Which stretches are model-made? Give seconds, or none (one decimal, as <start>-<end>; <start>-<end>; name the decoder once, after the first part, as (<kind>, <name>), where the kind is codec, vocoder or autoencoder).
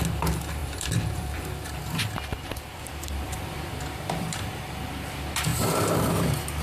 0.6-1.8 (vocoder, BigVGAN v2); 2.7-4.8